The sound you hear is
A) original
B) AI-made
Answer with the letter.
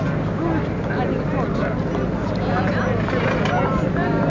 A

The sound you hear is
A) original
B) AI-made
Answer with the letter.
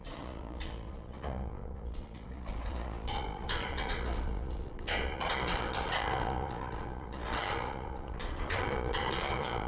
B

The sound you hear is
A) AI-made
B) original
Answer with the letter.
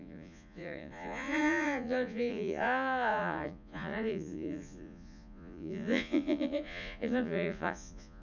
A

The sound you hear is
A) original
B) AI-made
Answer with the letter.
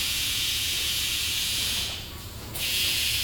B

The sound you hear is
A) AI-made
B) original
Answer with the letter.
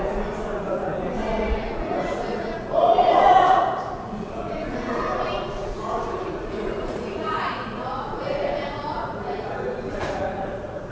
A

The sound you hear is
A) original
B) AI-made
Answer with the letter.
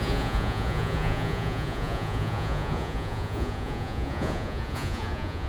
B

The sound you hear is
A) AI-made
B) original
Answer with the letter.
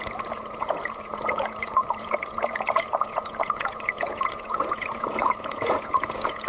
A